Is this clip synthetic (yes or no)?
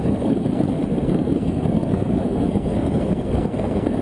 yes